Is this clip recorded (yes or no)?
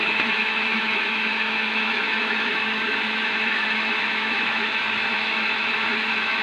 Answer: no